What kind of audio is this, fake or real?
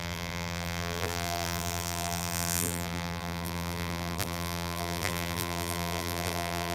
fake